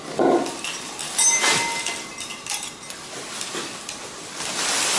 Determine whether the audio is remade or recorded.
recorded